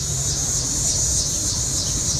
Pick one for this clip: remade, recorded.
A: remade